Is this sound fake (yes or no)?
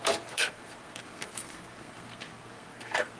yes